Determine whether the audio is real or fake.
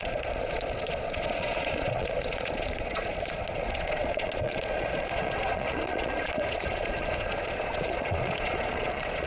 fake